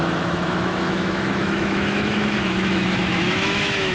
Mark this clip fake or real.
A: fake